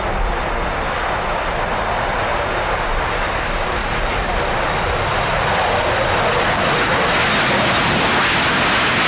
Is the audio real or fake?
real